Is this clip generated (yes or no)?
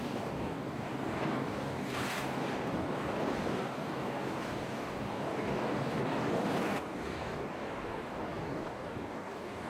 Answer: yes